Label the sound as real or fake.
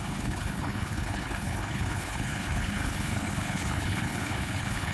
fake